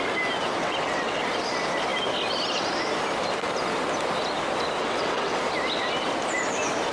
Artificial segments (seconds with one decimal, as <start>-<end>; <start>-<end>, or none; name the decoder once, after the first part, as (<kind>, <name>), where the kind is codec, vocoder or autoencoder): 0.6-1.2 (vocoder, WaveNeXt); 4.8-5.4